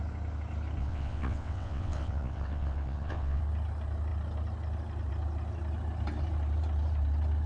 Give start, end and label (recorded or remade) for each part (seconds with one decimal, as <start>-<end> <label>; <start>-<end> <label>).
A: 0.0-0.8 recorded; 0.8-3.4 remade; 3.4-7.5 recorded